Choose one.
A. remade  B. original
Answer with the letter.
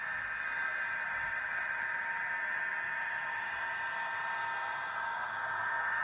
B